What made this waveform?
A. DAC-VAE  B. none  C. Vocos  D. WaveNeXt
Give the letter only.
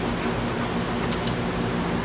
B